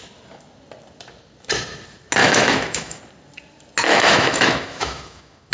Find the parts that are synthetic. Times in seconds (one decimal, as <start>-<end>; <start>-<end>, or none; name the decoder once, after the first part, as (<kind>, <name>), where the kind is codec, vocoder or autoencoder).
2.2-3.0 (autoencoder, DAC-VAE); 3.9-5.5